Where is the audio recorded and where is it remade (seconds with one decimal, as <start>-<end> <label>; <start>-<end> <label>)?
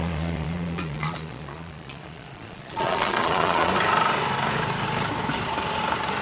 0.0-3.7 remade; 3.7-6.2 recorded